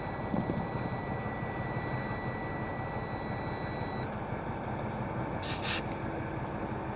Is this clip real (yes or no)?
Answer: yes